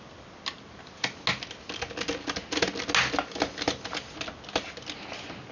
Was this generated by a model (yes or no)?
no